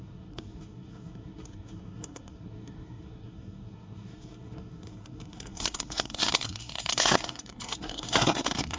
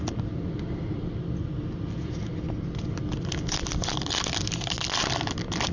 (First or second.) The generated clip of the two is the first